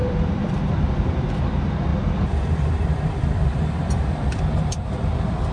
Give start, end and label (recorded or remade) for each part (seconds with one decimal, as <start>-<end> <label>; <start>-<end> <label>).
0.0-1.4 remade; 1.4-1.9 recorded; 1.9-4.4 remade; 4.4-5.5 recorded

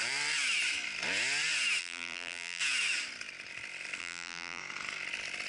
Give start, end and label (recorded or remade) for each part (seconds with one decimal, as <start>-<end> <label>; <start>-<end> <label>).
0.0-1.8 recorded; 1.8-2.6 remade; 2.6-4.0 recorded; 4.0-4.6 remade; 4.6-5.5 recorded

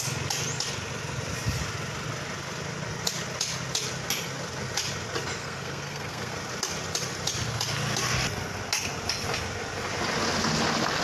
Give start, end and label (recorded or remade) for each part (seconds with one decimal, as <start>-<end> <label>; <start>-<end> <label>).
0.0-5.4 recorded; 5.4-6.3 remade; 6.3-11.0 recorded